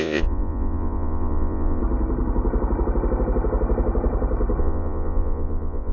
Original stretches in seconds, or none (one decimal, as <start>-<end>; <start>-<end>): 1.8-4.6